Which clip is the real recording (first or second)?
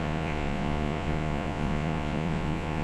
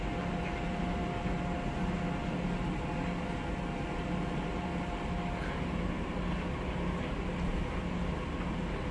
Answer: second